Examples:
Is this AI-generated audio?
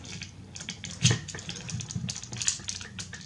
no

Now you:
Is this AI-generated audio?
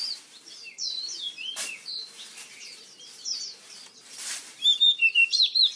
yes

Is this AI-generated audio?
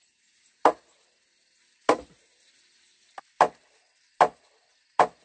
no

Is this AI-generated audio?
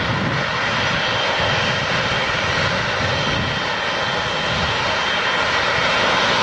no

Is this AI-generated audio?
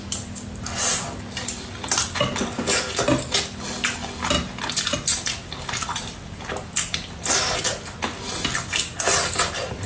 no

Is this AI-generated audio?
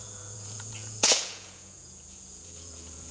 yes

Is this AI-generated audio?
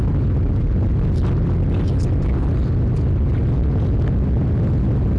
no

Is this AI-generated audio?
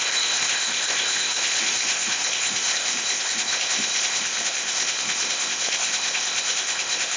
yes